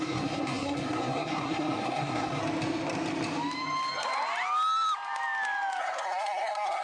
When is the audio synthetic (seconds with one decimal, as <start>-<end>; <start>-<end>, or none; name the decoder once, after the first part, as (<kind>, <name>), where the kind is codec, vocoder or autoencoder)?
0.0-2.4 (codec, SNAC); 5.8-6.8